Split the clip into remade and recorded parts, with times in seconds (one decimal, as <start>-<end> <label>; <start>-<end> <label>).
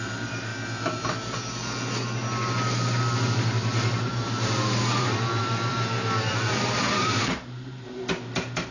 0.0-0.5 remade; 0.5-4.0 recorded; 4.0-8.7 remade